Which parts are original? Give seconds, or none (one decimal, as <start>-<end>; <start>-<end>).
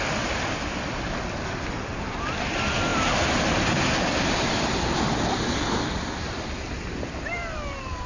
0.0-8.1